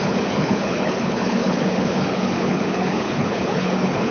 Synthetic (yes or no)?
yes